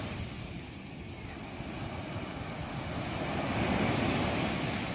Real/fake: real